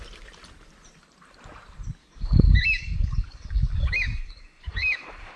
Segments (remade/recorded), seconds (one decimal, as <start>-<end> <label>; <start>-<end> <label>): 0.0-2.0 recorded; 2.0-5.4 remade

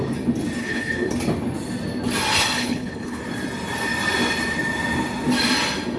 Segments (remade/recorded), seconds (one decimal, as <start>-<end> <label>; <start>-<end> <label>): 0.0-0.6 recorded; 0.6-1.1 remade; 1.1-2.6 recorded; 2.6-3.2 remade; 3.2-6.0 recorded

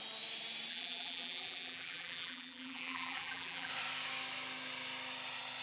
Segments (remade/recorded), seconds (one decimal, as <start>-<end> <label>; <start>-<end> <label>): 0.0-0.7 recorded; 0.7-3.7 remade; 3.7-5.6 recorded

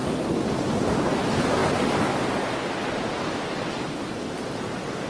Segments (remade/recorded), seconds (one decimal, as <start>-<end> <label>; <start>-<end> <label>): 0.0-5.1 recorded

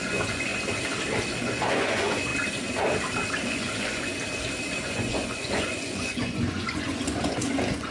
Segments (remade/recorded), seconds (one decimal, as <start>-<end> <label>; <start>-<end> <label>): 0.0-0.5 remade; 0.5-1.3 recorded; 1.3-2.3 remade; 2.3-3.5 recorded; 3.5-4.1 remade; 4.1-4.8 recorded; 4.8-7.9 remade

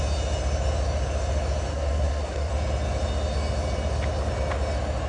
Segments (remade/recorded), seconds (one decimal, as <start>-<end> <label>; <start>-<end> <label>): 0.0-1.7 recorded; 1.7-2.5 remade; 2.5-5.1 recorded